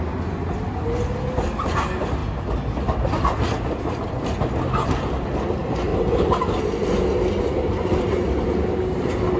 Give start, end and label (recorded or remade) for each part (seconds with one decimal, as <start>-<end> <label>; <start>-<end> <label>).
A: 0.0-9.4 recorded